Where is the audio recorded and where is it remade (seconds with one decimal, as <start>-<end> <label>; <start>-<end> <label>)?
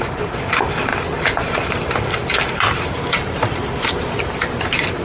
0.0-5.0 recorded